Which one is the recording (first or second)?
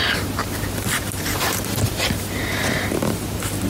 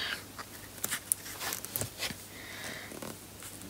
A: second